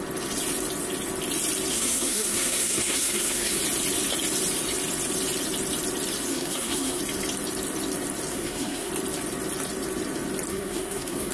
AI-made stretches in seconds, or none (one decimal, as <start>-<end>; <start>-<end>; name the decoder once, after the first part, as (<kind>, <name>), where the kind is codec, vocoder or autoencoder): 1.7-3.6 (codec, SNAC); 6.3-7.0; 8.3-8.9; 10.5-11.3

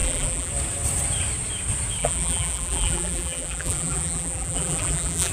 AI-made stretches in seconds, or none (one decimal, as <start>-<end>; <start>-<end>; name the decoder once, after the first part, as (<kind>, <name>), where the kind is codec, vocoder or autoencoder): 0.0-0.5 (vocoder, BigVGAN v2); 2.0-5.3

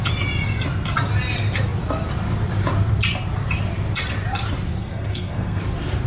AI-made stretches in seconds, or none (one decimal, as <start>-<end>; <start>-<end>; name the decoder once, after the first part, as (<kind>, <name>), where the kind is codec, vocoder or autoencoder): 4.8-5.6 (codec, SNAC)

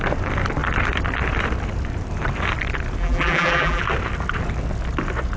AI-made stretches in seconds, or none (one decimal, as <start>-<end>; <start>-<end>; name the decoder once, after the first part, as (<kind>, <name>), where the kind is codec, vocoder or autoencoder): 3.0-3.8 (vocoder, BigVGAN v2)

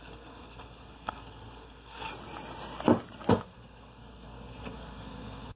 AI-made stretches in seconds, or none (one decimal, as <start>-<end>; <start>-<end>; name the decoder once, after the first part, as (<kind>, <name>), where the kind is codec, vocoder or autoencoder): 0.0-2.1 (codec, SNAC); 3.3-5.6